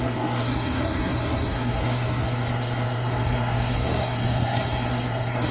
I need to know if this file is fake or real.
fake